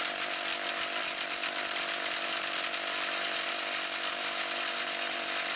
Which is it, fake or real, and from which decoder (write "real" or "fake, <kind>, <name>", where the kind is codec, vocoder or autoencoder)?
real